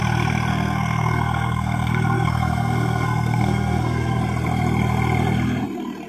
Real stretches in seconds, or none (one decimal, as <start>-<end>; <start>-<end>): 0.0-0.5; 4.2-6.1